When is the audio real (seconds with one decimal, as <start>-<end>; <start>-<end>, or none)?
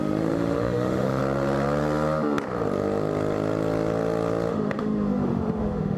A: 1.2-4.5